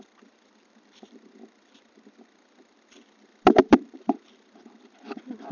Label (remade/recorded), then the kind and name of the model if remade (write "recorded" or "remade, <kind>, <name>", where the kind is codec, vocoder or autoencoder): remade, vocoder, BigVGAN v2